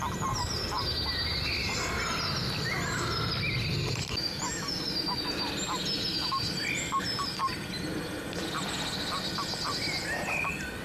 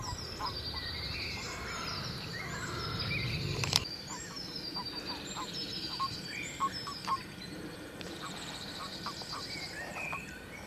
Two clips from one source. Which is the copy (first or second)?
second